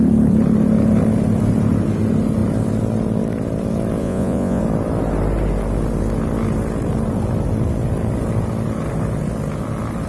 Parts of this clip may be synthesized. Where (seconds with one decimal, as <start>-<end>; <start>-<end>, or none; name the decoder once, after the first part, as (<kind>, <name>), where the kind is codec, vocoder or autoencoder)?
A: 4.0-4.6 (vocoder, Vocos)